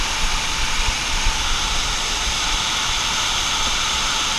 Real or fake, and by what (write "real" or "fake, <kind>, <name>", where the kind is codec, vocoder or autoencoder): fake, vocoder, BigVGAN v2